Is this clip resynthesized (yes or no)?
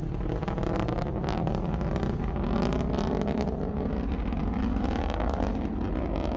no